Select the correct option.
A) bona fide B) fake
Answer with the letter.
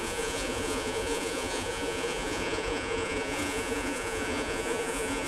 B